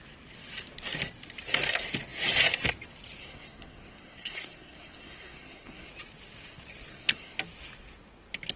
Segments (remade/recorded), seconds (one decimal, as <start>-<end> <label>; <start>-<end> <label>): 0.0-3.2 recorded; 3.2-5.9 remade; 5.9-6.9 recorded; 6.9-7.4 remade; 7.4-8.6 recorded